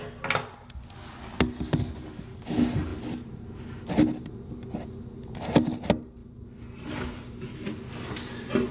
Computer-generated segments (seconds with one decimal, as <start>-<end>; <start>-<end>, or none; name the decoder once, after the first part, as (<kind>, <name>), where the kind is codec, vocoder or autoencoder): none